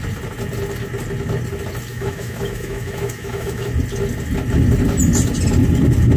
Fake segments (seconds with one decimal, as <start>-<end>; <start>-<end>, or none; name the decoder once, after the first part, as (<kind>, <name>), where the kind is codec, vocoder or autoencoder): 1.9-3.7 (autoencoder, DAC-VAE)